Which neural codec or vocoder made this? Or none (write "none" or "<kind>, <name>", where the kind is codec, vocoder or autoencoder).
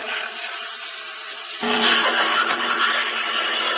vocoder, BigVGAN v2